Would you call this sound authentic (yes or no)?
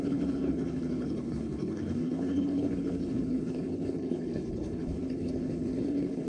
no